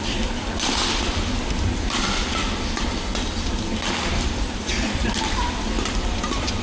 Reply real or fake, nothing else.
real